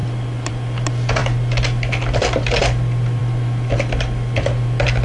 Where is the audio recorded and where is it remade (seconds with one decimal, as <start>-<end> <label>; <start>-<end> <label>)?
0.0-5.0 recorded